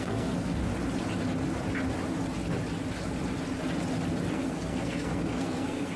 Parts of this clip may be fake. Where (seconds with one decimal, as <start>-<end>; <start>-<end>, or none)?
0.0-0.7; 4.3-6.0